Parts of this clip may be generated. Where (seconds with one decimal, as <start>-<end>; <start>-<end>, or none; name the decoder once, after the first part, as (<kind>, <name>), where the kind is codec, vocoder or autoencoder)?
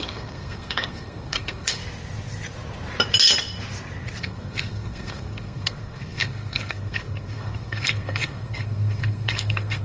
0.0-1.8 (codec, SNAC); 4.2-9.8